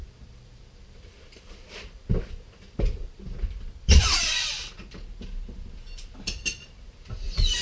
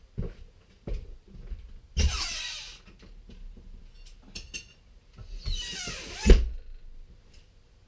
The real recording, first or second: second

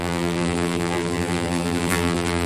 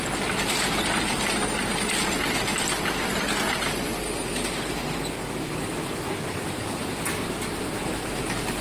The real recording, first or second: second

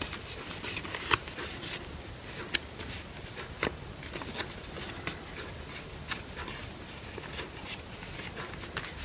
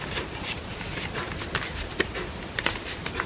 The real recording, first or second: first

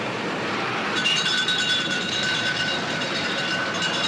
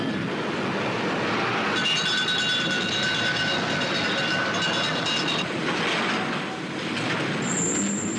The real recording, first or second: second